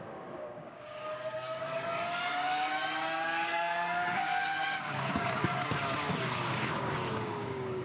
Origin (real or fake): fake